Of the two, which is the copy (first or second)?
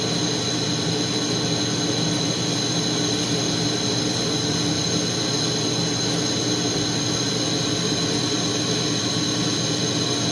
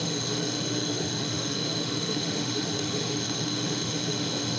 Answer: second